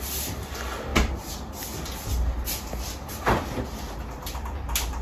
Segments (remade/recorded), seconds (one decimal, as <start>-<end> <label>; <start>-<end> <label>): 0.0-5.0 recorded